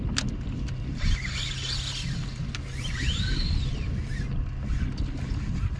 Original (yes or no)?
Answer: yes